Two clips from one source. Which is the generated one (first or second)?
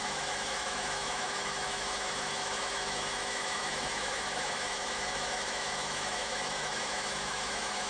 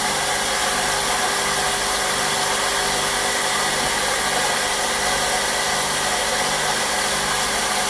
first